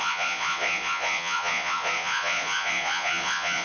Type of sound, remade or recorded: remade